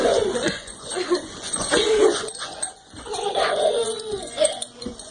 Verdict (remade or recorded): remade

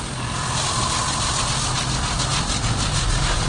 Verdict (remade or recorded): recorded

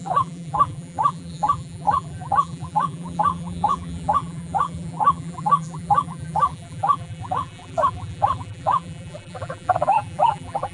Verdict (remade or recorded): remade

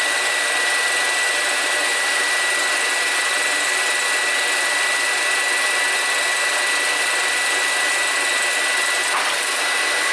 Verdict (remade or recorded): recorded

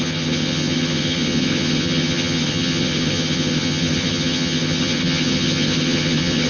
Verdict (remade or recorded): remade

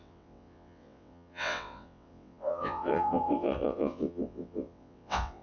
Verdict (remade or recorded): remade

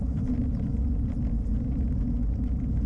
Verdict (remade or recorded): recorded